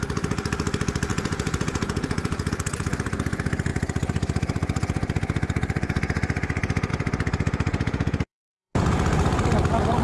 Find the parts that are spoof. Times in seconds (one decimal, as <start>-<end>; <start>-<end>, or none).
1.1-2.5; 7.7-9.4